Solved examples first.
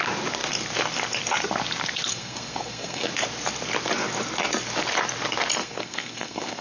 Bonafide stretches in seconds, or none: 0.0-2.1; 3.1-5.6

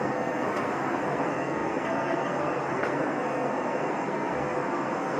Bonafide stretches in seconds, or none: none

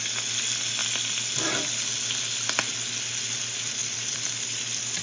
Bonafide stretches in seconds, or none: 0.0-3.8